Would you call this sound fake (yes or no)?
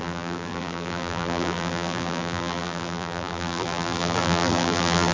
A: yes